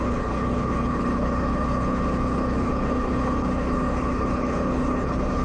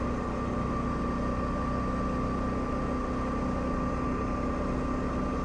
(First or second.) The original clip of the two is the second